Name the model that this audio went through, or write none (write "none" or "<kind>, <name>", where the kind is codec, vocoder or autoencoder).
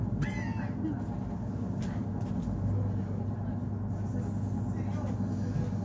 none